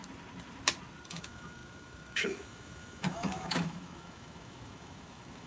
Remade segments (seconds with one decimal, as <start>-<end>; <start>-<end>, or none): 1.1-5.5